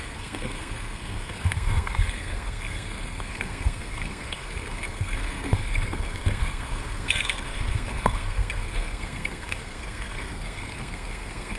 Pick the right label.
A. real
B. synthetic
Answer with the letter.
B